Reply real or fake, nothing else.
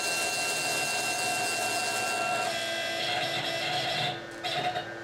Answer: real